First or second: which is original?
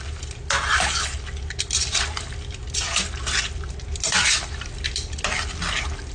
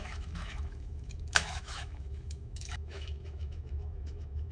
first